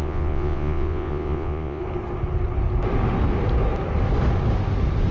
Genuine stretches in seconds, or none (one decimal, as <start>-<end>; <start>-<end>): 1.8-5.1